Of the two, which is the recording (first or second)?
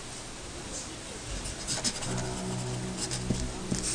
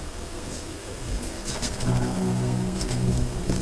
first